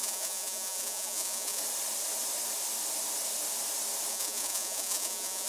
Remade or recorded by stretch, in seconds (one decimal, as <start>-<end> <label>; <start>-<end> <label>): 0.0-1.6 remade; 1.6-4.1 recorded; 4.1-5.5 remade